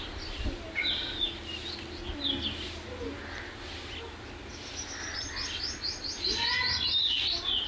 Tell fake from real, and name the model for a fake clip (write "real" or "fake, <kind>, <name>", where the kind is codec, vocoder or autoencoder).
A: real